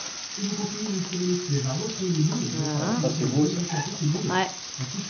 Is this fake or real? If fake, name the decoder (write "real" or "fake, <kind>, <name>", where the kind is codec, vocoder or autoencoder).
real